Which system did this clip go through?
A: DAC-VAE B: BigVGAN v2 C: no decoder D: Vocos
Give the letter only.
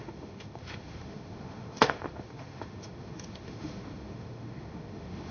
A